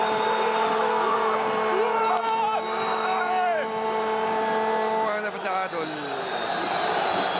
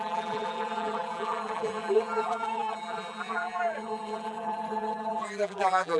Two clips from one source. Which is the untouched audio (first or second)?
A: first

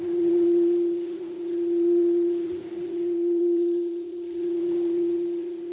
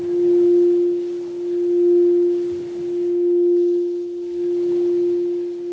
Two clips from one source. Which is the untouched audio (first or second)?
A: second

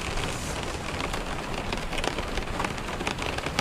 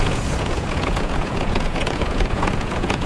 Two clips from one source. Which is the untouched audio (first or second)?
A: first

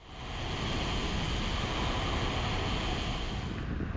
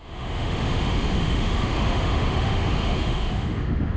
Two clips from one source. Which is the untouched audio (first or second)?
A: first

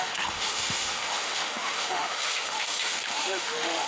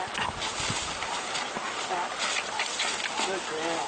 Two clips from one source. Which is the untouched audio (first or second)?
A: second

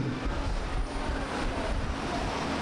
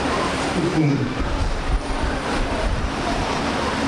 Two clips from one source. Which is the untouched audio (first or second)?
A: first